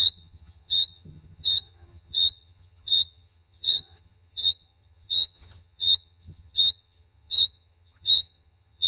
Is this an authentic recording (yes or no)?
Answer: no